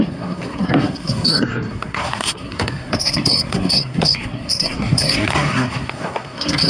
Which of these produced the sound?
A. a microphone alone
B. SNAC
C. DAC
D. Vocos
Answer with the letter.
B